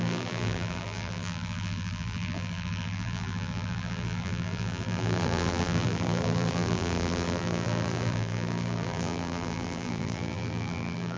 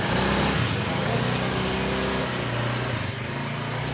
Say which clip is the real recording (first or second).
second